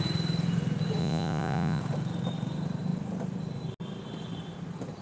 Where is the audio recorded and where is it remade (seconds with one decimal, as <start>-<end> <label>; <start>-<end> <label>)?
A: 0.0-1.0 recorded; 1.0-1.8 remade; 1.8-5.0 recorded